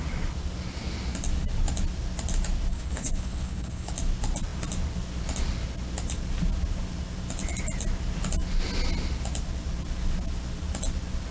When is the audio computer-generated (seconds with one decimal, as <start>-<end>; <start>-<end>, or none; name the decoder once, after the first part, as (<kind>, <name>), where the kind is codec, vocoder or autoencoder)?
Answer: 2.7-3.9 (codec, HILCodec)